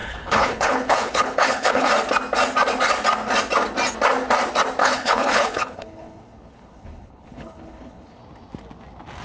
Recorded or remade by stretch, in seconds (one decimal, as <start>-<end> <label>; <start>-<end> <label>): 0.0-1.9 remade; 1.9-4.8 recorded; 4.8-8.2 remade; 8.2-9.2 recorded